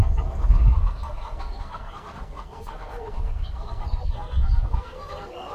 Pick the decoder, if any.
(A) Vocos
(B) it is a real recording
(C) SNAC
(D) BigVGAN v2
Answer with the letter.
C